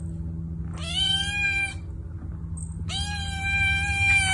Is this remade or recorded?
recorded